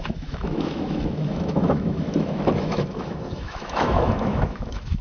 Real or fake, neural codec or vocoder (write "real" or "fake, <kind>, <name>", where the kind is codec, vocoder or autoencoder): fake, autoencoder, DAC-VAE